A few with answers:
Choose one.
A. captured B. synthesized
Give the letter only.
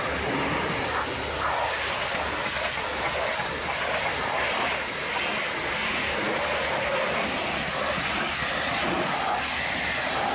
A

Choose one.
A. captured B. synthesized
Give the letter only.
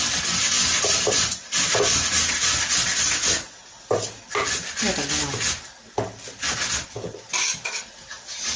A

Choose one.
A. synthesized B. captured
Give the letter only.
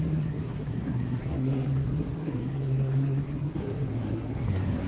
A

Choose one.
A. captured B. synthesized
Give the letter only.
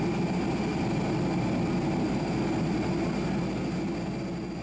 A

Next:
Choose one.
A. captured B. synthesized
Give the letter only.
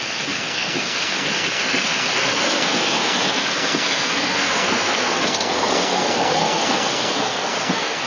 B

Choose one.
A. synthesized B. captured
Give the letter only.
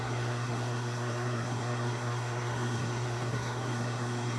A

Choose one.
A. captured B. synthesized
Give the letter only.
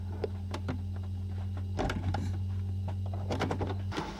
A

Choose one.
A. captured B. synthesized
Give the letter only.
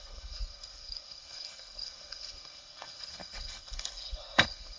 B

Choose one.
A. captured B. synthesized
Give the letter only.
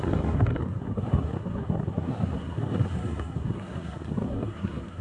B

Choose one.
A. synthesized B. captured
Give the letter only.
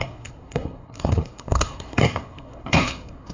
A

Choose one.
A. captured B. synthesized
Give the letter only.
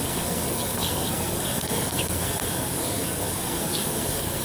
B